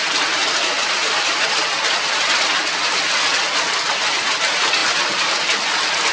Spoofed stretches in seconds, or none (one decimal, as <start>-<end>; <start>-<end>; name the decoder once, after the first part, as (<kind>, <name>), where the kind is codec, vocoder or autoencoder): 4.8-5.4 (vocoder, BigVGAN v2)